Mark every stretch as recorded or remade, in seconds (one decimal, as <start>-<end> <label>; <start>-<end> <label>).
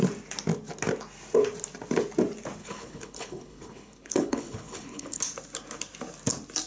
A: 0.0-2.6 recorded; 2.6-5.2 remade; 5.2-6.7 recorded